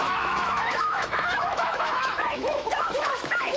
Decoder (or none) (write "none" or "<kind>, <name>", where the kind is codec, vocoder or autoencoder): autoencoder, DAC-VAE